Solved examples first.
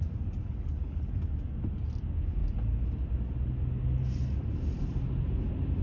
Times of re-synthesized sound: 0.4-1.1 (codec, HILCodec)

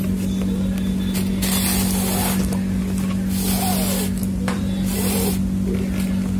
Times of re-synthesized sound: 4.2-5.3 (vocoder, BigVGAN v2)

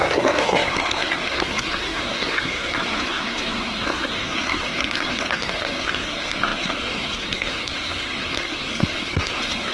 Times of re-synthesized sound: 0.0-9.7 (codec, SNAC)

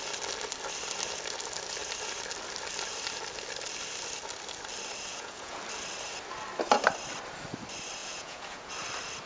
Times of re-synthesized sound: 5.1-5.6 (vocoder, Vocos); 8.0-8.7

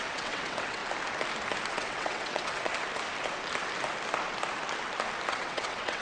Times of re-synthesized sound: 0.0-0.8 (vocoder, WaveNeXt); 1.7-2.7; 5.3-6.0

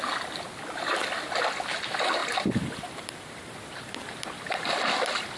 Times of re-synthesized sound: 2.2-4.1 (vocoder, BigVGAN v2)

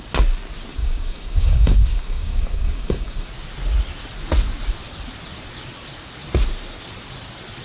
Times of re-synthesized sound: 0.8-3.2 (codec, DAC)